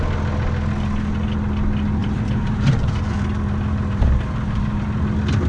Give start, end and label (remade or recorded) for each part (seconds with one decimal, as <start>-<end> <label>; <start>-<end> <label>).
0.0-2.0 recorded; 2.0-4.9 remade; 4.9-5.5 recorded

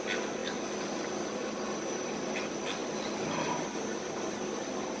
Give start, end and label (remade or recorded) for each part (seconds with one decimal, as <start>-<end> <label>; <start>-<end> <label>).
0.0-5.0 recorded

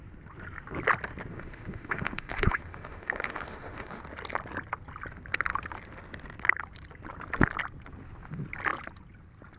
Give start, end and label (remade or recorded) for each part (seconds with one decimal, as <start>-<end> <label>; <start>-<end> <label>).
0.0-1.3 recorded; 1.3-4.0 remade; 4.0-9.6 recorded